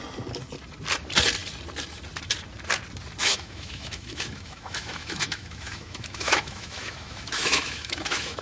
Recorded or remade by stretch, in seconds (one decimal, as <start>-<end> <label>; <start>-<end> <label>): 0.0-3.2 recorded; 3.2-8.4 remade